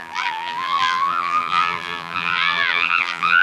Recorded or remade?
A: remade